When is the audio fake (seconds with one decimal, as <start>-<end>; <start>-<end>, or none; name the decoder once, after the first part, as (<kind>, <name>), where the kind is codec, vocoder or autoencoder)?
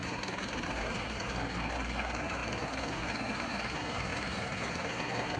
0.0-5.4 (codec, SNAC)